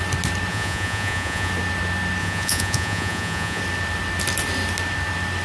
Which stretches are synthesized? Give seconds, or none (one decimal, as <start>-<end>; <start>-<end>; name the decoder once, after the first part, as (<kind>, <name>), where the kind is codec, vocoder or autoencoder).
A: 0.5-1.5 (vocoder, Vocos); 2.2-3.6